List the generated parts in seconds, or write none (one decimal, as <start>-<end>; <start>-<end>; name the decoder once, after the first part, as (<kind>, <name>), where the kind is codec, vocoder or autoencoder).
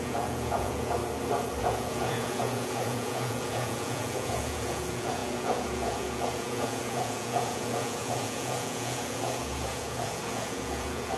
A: 0.0-1.0 (vocoder, Vocos); 1.6-11.2